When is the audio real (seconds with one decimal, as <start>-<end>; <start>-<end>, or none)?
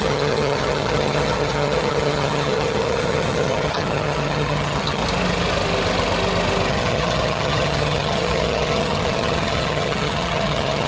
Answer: 5.0-6.7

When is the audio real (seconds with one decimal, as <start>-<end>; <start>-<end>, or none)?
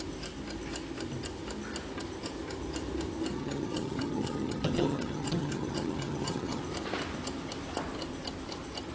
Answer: 0.0-3.3; 6.6-8.9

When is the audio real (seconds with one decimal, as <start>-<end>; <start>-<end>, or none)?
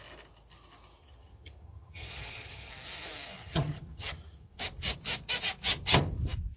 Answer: 0.0-1.0; 2.7-3.4; 4.6-6.6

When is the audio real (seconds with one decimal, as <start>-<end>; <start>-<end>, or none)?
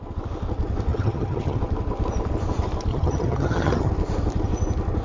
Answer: 0.0-0.9; 1.6-2.9; 3.9-5.0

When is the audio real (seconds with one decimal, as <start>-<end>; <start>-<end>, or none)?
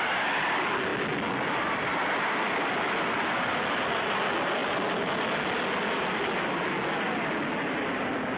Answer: 0.0-8.4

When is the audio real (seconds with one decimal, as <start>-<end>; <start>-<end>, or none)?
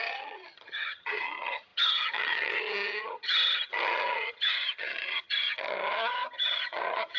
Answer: none